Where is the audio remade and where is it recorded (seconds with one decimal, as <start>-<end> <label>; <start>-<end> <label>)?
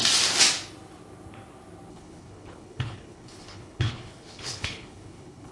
0.0-1.9 recorded; 1.9-5.5 remade